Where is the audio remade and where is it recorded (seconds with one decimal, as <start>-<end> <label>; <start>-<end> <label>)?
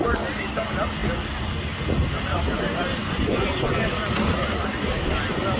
0.0-3.0 recorded; 3.0-3.9 remade; 3.9-5.6 recorded